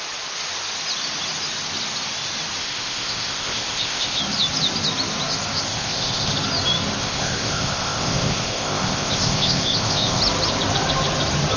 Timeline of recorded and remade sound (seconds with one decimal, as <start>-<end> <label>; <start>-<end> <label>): 0.0-2.6 recorded; 2.6-4.2 remade; 4.2-5.7 recorded; 5.7-6.3 remade; 6.3-7.0 recorded; 7.0-10.2 remade; 10.2-11.6 recorded